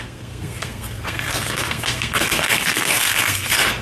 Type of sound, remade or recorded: remade